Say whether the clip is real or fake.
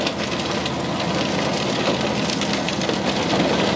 real